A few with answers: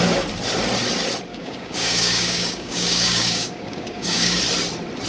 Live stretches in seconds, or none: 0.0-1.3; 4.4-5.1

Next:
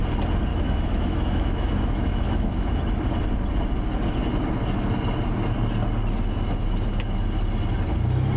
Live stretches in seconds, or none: 0.0-0.5; 2.8-8.4

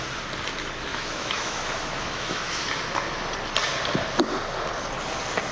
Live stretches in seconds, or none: 0.0-0.9; 2.6-5.5

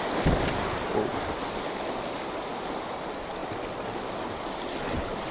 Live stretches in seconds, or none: 0.0-5.3